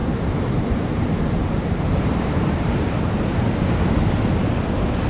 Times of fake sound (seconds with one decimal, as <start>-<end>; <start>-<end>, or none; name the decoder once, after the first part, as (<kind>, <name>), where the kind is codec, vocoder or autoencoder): 0.0-3.0 (vocoder, BigVGAN v2)